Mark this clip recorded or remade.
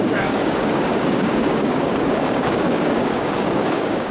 remade